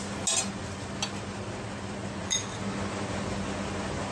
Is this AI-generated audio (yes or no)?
no